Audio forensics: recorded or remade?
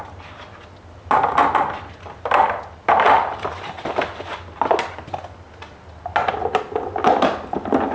recorded